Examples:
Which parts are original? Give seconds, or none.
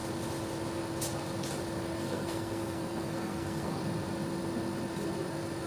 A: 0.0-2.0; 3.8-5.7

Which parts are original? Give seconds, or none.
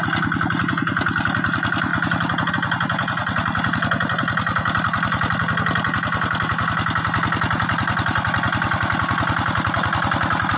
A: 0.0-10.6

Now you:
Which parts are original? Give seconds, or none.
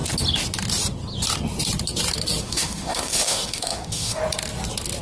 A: 0.0-2.4; 4.2-5.0